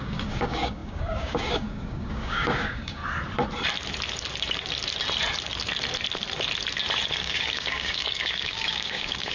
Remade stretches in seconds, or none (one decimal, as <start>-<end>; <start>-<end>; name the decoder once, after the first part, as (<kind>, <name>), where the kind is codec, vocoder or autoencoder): 0.0-3.0 (codec, DAC); 7.1-9.3